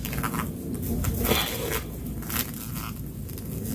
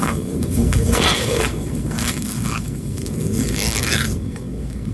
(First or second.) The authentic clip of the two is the first